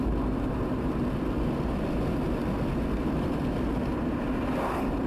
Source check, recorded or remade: recorded